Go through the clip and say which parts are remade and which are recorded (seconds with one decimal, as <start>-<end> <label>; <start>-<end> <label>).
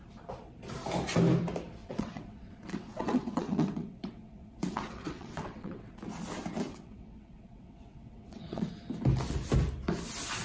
0.0-1.8 recorded; 1.8-5.9 remade; 5.9-6.7 recorded; 6.7-8.7 remade; 8.7-10.4 recorded